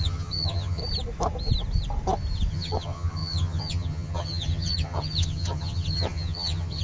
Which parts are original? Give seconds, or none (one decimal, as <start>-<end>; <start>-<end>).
0.8-2.5